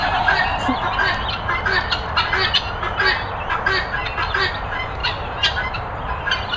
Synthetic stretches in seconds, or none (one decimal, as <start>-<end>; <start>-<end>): 0.0-0.5; 4.5-6.6